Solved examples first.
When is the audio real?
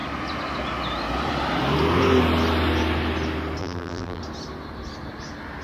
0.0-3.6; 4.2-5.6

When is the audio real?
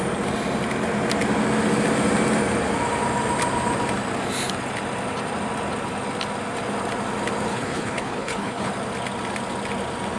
0.0-7.5; 8.7-10.2